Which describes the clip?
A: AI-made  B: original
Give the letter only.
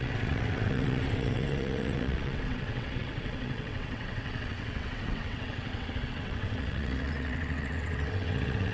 A